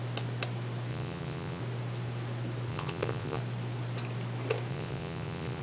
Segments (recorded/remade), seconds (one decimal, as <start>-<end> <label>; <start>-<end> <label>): 0.0-0.9 recorded; 0.9-1.6 remade; 1.6-2.7 recorded; 2.7-3.4 remade; 3.4-4.7 recorded; 4.7-5.6 remade